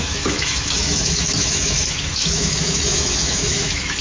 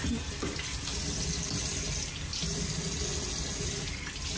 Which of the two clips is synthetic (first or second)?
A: first